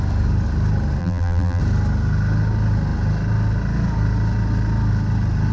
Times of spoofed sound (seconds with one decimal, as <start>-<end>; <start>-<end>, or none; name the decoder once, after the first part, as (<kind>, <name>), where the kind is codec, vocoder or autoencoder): 1.0-1.6 (vocoder, BigVGAN v2)